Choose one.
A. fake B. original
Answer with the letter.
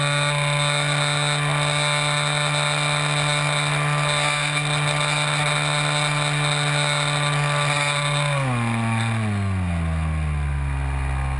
B